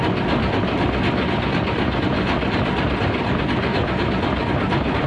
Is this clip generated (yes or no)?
no